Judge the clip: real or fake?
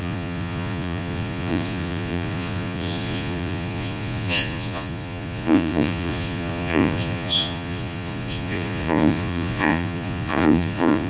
fake